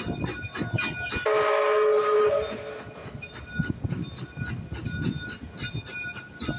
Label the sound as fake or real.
real